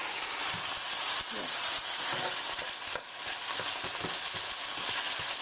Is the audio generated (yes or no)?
no